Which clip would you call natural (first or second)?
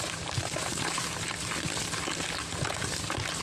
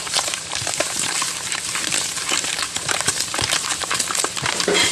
first